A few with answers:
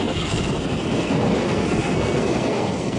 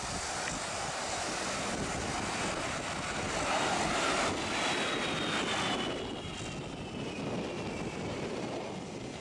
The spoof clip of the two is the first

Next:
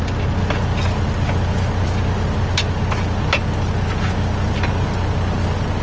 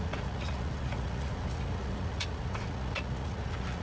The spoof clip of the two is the second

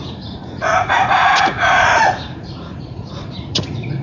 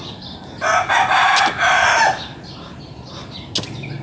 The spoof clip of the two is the first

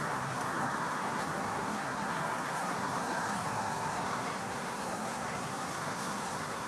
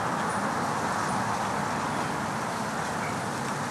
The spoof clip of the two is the first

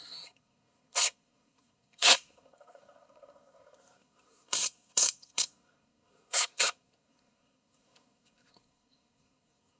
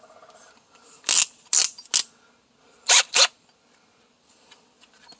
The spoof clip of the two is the first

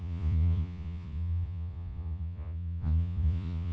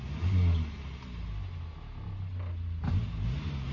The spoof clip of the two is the first